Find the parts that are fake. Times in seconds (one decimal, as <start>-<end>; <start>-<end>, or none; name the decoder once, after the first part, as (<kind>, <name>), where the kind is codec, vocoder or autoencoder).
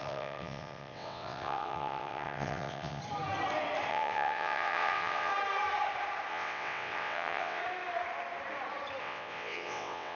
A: 0.0-3.0 (vocoder, WaveNeXt); 3.9-5.3; 6.3-7.6; 9.0-10.2